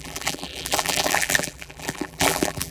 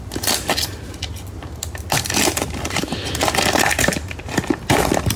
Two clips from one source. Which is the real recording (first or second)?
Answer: second